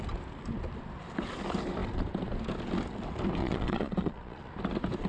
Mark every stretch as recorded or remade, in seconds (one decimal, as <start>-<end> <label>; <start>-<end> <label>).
0.0-3.4 recorded; 3.4-4.5 remade; 4.5-5.1 recorded